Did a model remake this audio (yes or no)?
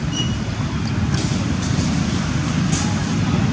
no